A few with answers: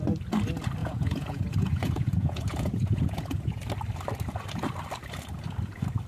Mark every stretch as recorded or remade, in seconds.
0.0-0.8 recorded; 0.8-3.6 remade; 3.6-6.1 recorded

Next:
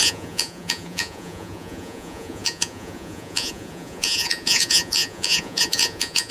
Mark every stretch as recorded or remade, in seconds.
0.0-6.3 remade

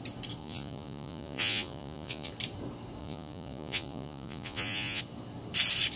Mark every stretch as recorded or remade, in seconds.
0.0-0.4 recorded; 0.4-2.3 remade; 2.3-3.0 recorded; 3.0-5.0 remade; 5.0-6.0 recorded

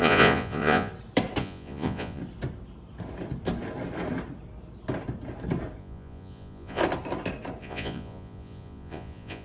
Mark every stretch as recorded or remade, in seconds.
0.0-0.9 remade; 0.9-1.4 recorded; 1.4-2.2 remade; 2.2-5.8 recorded; 5.8-6.8 remade; 6.8-7.6 recorded; 7.6-9.4 remade